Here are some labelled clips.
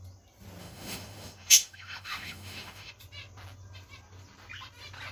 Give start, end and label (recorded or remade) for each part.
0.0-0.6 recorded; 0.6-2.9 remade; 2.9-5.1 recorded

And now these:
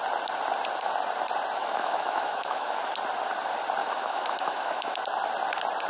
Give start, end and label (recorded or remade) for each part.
0.0-1.6 recorded; 1.6-2.9 remade; 2.9-3.8 recorded; 3.8-5.0 remade; 5.0-5.9 recorded

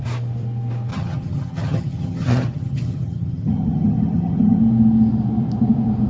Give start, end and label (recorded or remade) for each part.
0.0-0.9 recorded; 0.9-4.6 remade; 4.6-6.1 recorded

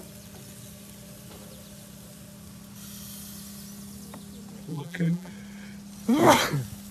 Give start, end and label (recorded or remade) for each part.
0.0-4.7 recorded; 4.7-5.3 remade; 5.3-6.9 recorded

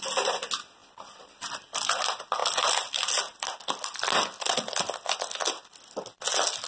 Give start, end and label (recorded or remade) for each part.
0.0-6.7 recorded

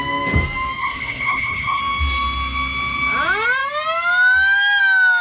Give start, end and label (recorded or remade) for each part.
0.0-0.8 recorded; 0.8-1.8 remade; 1.8-5.2 recorded

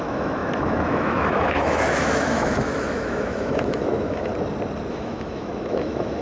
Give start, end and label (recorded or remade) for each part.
0.0-4.3 remade; 4.3-4.9 recorded; 4.9-6.2 remade

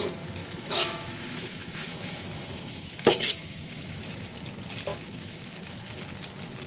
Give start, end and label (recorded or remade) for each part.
0.0-0.4 recorded; 0.4-4.4 remade; 4.4-4.9 recorded; 4.9-6.0 remade; 6.0-6.7 recorded